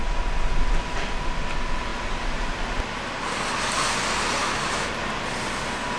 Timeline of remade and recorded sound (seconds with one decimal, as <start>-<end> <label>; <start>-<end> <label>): 0.0-4.4 recorded; 4.4-4.9 remade; 4.9-6.0 recorded